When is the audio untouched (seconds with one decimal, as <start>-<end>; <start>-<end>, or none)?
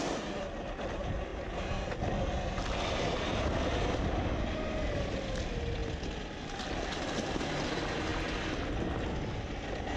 0.0-10.0